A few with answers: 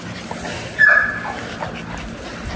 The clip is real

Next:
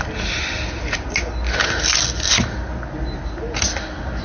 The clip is real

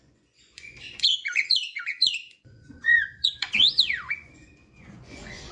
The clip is fake